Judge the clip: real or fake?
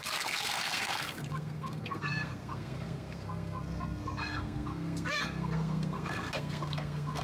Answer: fake